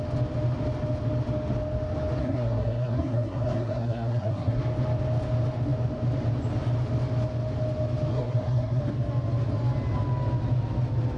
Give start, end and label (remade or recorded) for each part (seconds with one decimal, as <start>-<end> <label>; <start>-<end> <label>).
0.0-2.2 recorded; 2.2-4.6 remade; 4.6-8.1 recorded; 8.1-8.8 remade; 8.8-11.2 recorded